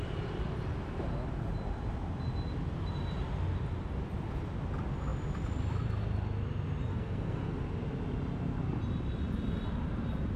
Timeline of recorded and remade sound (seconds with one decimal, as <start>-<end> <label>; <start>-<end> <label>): 0.0-6.9 recorded; 6.9-7.6 remade; 7.6-10.4 recorded